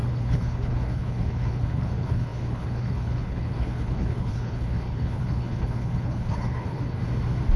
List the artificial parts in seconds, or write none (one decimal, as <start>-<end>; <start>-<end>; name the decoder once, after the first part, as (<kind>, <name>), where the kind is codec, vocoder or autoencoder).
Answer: 0.0-7.0 (codec, HILCodec)

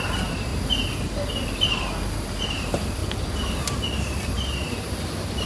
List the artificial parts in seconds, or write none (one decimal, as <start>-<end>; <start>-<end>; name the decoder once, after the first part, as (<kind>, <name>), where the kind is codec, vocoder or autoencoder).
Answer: none

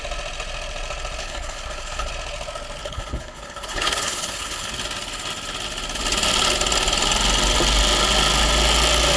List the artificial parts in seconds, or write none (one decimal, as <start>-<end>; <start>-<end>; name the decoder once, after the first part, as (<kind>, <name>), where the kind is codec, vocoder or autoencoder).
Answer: 1.2-2.1 (codec, HILCodec); 2.8-4.7

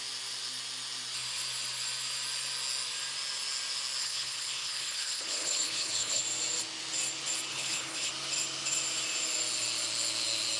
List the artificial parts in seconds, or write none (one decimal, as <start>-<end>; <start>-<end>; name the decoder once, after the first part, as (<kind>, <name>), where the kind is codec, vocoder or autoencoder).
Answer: 4.0-6.2 (codec, HILCodec); 7.5-8.1

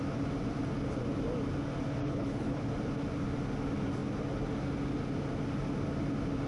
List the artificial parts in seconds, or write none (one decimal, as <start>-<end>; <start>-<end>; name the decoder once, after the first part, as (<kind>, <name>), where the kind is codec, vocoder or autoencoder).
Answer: 2.0-2.7 (codec, HILCodec)